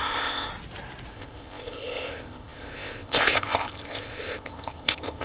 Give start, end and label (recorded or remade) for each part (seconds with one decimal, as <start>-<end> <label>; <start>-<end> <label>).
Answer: 0.0-0.5 remade; 0.5-1.1 recorded; 1.1-5.2 remade